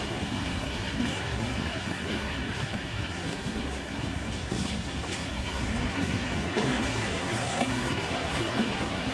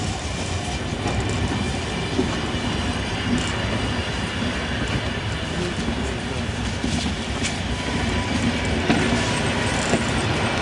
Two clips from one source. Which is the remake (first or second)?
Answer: first